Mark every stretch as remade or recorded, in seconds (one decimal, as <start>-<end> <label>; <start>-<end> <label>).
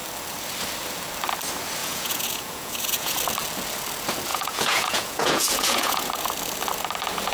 0.0-1.8 recorded; 1.8-3.1 remade; 3.1-4.3 recorded; 4.3-6.1 remade; 6.1-7.3 recorded